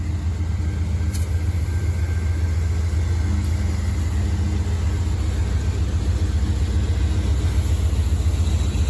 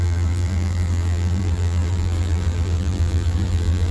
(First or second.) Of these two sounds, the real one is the first